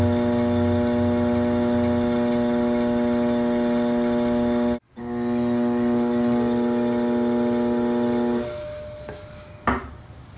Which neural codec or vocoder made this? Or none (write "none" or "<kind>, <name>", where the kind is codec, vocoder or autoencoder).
none